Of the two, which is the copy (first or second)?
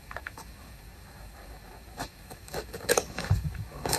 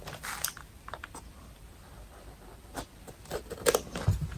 first